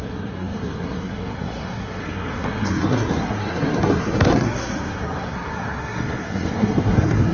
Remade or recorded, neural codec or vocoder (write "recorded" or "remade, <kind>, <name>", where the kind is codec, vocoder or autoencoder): remade, codec, SNAC